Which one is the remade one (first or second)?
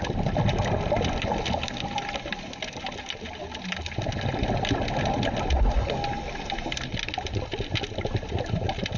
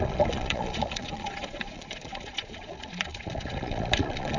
second